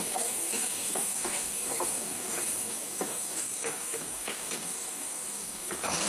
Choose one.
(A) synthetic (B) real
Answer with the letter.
A